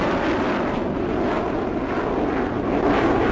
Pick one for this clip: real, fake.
real